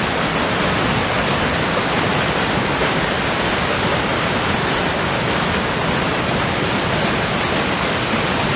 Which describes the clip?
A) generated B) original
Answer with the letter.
B